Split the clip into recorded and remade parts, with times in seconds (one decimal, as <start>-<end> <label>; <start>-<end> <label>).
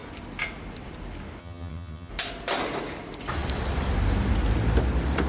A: 0.0-1.4 recorded; 1.4-2.1 remade; 2.1-5.3 recorded